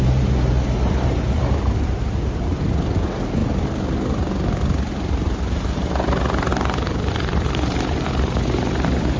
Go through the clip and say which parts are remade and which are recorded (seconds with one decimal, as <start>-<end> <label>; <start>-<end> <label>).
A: 0.0-3.4 remade; 3.4-4.9 recorded; 4.9-6.5 remade; 6.5-7.1 recorded; 7.1-9.2 remade